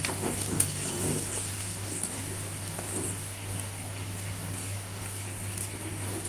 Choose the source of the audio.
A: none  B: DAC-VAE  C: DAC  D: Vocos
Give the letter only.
C